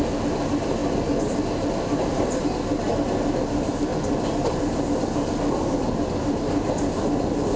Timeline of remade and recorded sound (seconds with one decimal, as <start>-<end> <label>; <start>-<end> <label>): 0.0-7.6 recorded